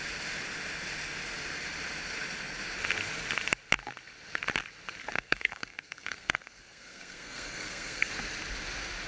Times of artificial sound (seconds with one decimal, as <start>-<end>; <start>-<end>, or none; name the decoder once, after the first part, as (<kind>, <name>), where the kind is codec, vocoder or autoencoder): 5.0-8.1 (codec, SNAC)